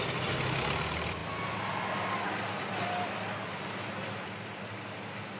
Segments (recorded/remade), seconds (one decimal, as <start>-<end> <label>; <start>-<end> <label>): 0.0-5.4 recorded